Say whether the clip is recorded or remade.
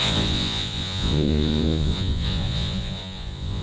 remade